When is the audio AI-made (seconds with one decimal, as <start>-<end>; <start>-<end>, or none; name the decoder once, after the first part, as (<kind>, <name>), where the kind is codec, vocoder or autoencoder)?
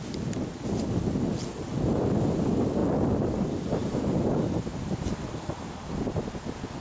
none